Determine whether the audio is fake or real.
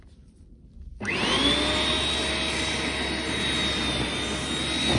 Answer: real